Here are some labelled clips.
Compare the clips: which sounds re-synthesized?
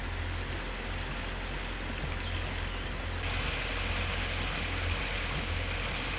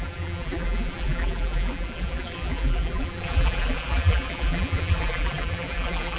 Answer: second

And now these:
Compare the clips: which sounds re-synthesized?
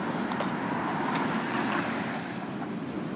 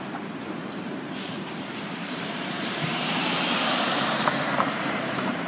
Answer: second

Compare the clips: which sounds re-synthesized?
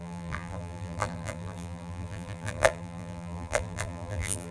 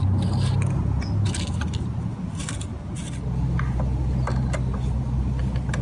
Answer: first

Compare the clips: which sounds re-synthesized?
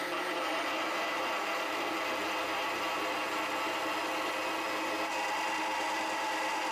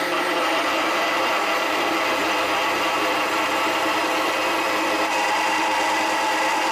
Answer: second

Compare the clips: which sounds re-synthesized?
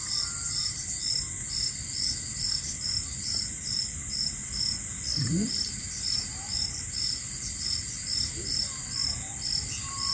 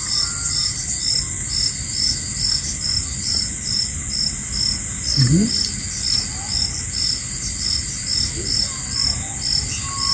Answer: first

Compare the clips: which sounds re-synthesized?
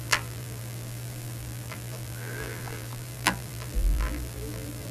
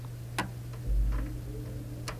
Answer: first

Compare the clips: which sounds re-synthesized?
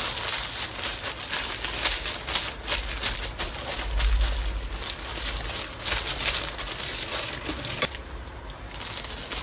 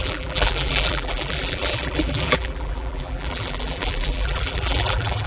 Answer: second